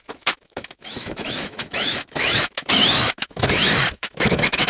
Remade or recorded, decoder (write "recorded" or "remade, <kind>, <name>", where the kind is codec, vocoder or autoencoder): remade, autoencoder, DAC-VAE